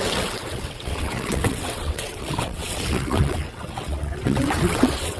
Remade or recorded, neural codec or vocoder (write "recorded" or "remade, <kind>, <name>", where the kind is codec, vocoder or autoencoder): remade, vocoder, WaveNeXt